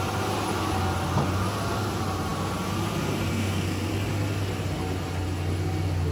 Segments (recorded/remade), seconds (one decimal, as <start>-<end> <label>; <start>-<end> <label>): 0.0-3.3 recorded; 3.3-3.9 remade; 3.9-6.1 recorded